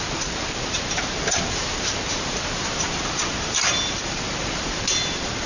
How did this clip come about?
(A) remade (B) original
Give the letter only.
A